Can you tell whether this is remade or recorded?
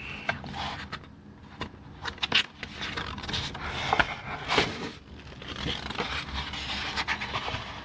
recorded